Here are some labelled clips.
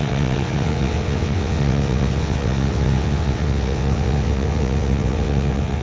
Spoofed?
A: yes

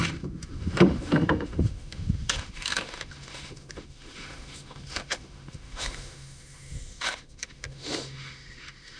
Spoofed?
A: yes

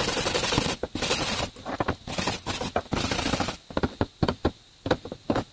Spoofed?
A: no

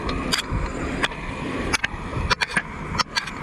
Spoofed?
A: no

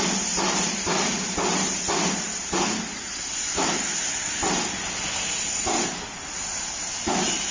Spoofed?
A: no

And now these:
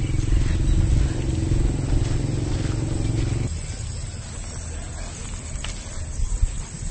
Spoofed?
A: no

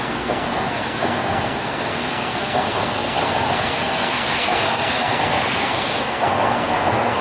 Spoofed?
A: yes